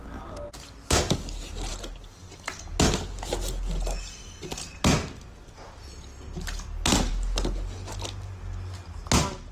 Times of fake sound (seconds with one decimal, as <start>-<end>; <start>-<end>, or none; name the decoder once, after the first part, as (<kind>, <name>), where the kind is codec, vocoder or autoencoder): none